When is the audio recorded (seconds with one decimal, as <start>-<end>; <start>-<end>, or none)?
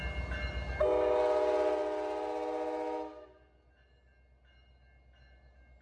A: 0.0-5.8